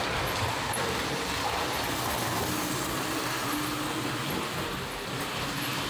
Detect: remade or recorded recorded